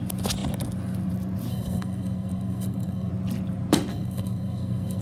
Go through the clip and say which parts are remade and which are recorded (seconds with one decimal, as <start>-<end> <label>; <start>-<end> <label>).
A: 0.0-1.5 recorded; 1.5-3.1 remade; 3.1-3.9 recorded; 3.9-5.0 remade